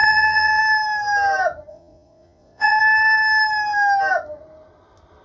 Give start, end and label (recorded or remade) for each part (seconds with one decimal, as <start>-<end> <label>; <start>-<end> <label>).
0.0-0.6 remade; 0.6-1.7 recorded; 1.7-2.8 remade; 2.8-5.2 recorded